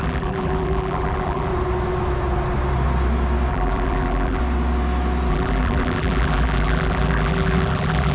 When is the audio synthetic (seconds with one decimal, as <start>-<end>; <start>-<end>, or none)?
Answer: 0.0-1.5; 3.5-4.4; 5.3-8.1